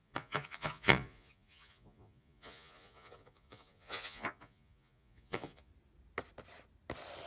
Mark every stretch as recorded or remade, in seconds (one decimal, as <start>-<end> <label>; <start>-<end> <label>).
0.0-5.7 remade; 5.7-7.3 recorded